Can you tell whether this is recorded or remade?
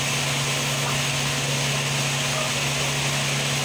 recorded